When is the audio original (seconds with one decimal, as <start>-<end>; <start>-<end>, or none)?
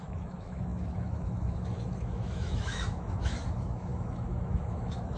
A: none